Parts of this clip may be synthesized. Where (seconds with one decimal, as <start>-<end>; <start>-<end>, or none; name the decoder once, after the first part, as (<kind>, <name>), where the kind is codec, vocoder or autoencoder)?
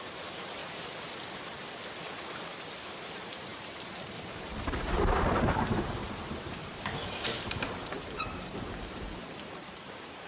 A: 0.0-0.6 (vocoder, BigVGAN v2); 3.0-10.3